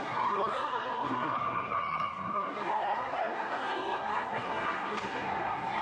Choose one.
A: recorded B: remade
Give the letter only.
B